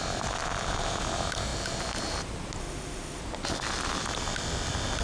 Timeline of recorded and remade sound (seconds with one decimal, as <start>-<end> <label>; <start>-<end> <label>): 0.0-2.6 recorded; 2.6-3.2 remade; 3.2-5.0 recorded